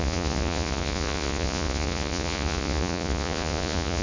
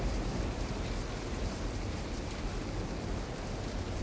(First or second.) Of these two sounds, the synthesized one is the first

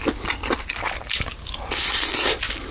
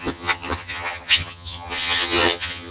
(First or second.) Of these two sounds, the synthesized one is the second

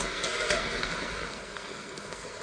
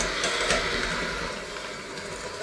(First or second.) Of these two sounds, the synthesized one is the first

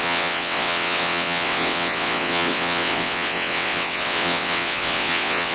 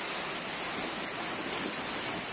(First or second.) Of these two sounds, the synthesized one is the first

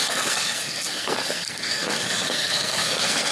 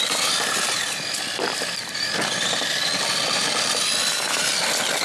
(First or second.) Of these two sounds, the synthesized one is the first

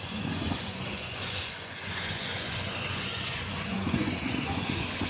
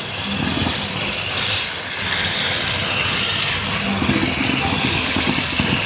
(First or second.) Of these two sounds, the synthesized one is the first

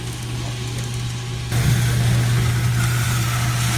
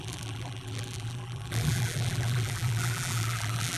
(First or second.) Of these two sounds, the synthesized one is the second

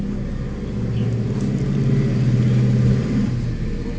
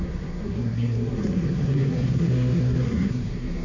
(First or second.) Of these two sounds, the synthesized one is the second